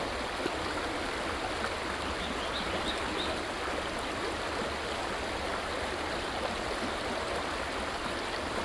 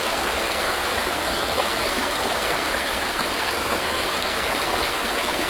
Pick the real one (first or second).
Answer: first